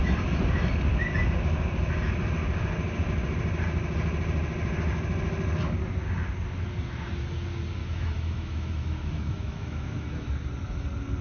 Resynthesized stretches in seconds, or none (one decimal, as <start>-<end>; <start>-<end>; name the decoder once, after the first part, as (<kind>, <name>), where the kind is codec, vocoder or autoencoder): 7.8-10.3 (autoencoder, DAC-VAE)